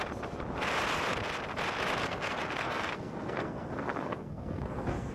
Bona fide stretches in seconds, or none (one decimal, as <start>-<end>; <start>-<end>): 0.0-2.0